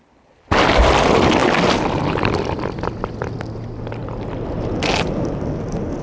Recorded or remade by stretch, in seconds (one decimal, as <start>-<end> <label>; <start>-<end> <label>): 0.0-6.0 recorded